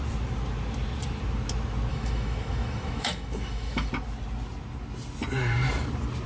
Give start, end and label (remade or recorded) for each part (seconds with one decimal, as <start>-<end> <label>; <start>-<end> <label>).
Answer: 0.0-1.9 recorded; 1.9-3.9 remade; 3.9-6.3 recorded